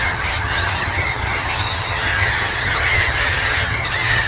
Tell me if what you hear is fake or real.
fake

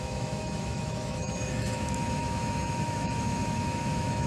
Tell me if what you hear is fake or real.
fake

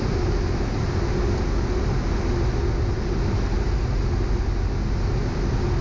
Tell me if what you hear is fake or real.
real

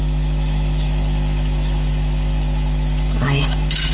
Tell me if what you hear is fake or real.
fake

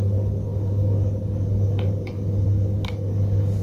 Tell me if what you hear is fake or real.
fake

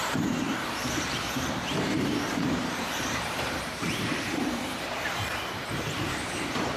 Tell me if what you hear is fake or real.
fake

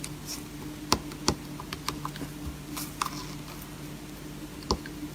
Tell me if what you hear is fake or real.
real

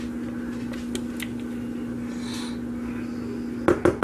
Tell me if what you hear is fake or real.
real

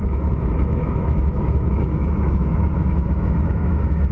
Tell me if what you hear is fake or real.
fake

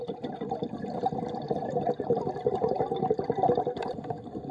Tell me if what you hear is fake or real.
real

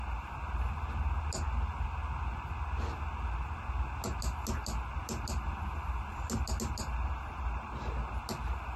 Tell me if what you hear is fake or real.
real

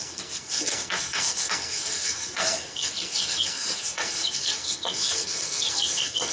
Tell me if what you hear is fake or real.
fake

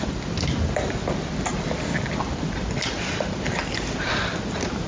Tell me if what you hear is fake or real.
real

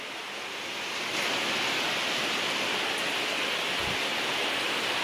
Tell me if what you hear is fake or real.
real